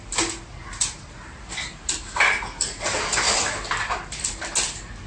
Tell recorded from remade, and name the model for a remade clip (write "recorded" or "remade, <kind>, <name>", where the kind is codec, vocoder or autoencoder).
recorded